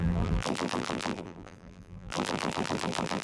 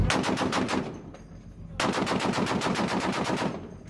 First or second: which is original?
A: second